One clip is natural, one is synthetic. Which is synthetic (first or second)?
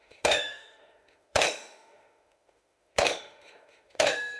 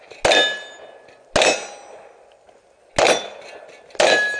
first